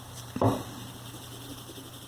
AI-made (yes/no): no